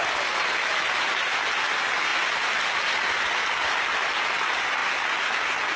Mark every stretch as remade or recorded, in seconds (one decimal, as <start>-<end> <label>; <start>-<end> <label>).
0.0-2.1 recorded; 2.1-4.2 remade; 4.2-5.8 recorded